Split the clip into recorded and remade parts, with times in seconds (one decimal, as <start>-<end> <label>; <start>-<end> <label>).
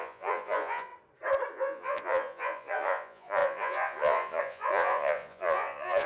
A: 0.0-0.9 remade; 0.9-1.5 recorded; 1.5-6.1 remade